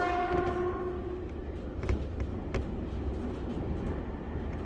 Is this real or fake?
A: real